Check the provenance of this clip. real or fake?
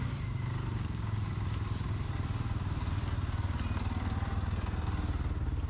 real